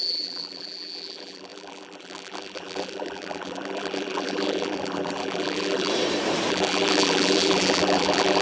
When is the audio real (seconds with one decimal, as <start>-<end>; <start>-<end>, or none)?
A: 5.9-6.5

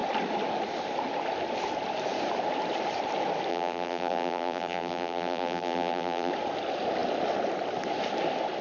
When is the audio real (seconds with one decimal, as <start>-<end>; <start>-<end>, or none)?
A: 0.0-3.5; 6.3-8.6